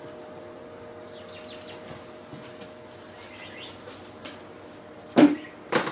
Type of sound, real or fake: real